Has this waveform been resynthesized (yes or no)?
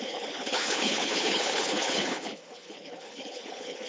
yes